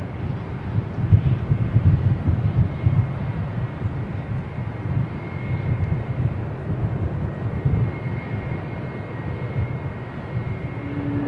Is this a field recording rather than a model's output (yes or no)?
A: yes